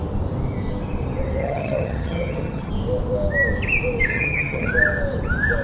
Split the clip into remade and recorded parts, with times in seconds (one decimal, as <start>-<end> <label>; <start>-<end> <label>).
0.0-1.4 recorded; 1.4-2.7 remade; 2.7-4.1 recorded; 4.1-4.7 remade; 4.7-5.6 recorded